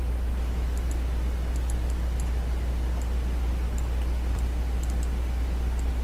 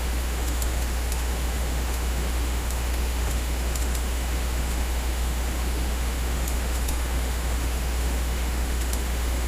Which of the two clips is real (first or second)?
first